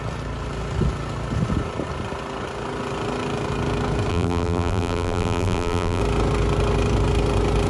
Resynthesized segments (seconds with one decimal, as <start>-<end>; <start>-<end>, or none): 4.1-6.0